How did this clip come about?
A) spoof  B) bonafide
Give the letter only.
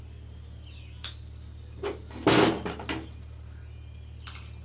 B